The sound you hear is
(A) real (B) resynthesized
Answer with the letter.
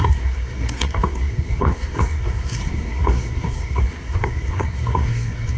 B